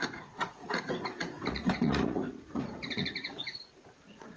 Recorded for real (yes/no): no